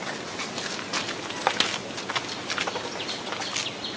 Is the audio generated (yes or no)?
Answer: no